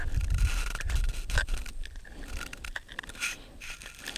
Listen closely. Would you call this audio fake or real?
real